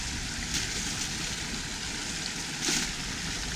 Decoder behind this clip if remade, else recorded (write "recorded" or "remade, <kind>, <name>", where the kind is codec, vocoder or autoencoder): recorded